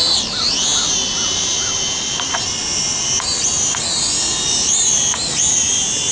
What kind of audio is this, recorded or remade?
recorded